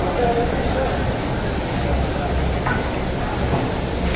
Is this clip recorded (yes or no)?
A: yes